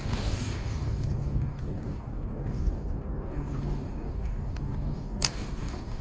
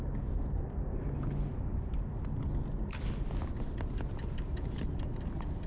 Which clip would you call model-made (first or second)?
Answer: first